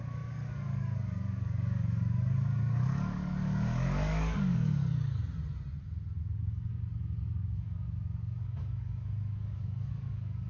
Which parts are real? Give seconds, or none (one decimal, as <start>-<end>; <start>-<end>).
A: 5.2-6.4